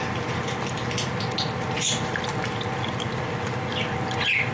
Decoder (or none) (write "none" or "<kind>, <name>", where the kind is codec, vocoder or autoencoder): vocoder, BigVGAN v2